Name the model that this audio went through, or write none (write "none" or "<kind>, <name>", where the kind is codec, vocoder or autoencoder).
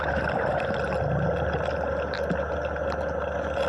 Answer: none